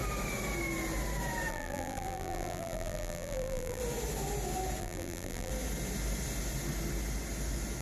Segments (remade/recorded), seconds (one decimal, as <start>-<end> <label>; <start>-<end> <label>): 0.0-1.5 recorded; 1.5-3.8 remade; 3.8-4.8 recorded; 4.8-5.5 remade; 5.5-7.8 recorded